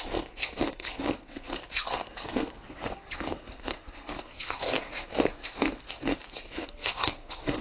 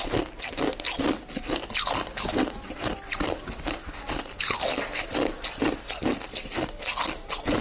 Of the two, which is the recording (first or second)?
second